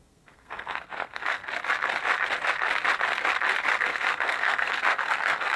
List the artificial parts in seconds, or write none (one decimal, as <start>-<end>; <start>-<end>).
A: 0.0-1.4; 3.8-5.6